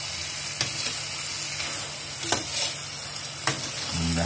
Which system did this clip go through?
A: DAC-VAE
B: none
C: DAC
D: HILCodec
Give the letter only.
B